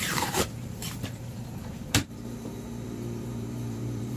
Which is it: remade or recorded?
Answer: remade